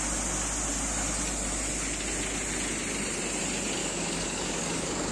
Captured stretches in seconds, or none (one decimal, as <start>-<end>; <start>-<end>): 0.0-3.8